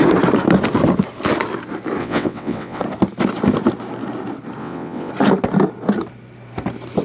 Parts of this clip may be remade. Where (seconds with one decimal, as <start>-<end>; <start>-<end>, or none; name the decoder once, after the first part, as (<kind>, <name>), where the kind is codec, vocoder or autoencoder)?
2.0-2.8 (vocoder, WaveNeXt); 4.6-5.1